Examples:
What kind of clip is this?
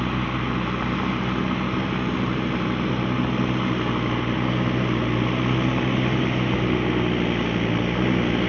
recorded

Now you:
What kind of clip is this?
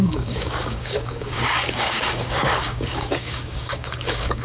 remade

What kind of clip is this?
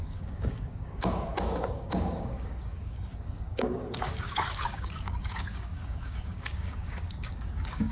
remade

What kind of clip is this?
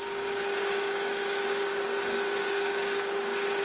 remade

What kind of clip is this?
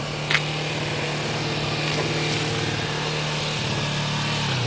recorded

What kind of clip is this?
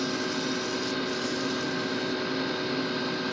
recorded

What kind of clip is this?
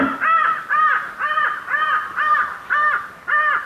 recorded